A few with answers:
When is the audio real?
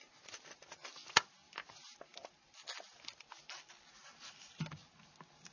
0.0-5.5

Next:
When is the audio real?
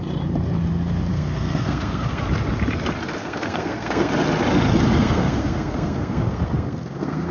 0.0-1.1; 2.2-3.2; 4.1-5.0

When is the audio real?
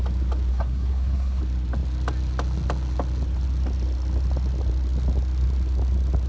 0.0-0.5; 1.4-6.3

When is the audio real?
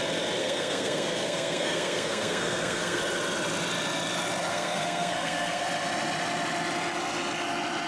0.0-0.4; 3.0-4.5; 5.6-7.9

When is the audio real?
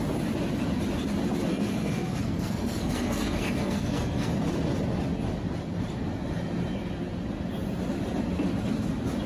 0.0-1.5; 4.3-9.3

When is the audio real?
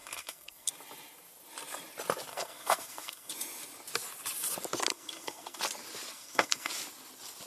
0.7-2.3; 3.3-4.9; 5.6-6.1; 6.7-7.5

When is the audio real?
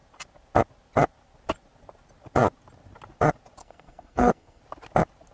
0.0-3.6; 4.6-5.3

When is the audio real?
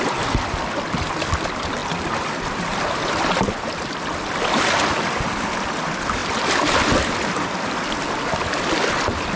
0.0-9.4